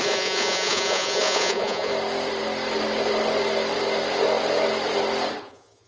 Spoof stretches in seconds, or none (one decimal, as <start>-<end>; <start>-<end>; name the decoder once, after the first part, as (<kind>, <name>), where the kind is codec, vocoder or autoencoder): 0.0-1.9 (vocoder, Vocos); 5.4-5.9